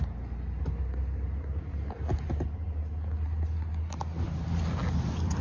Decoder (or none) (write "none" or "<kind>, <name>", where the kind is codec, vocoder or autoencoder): none